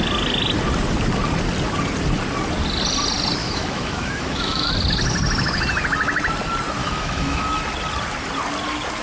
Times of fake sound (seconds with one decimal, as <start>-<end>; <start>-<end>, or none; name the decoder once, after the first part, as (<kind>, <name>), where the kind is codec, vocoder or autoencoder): 3.4-4.7 (autoencoder, DAC-VAE); 6.8-7.6